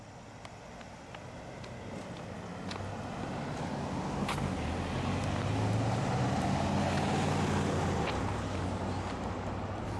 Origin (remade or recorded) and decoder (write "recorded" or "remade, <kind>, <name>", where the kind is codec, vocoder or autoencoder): recorded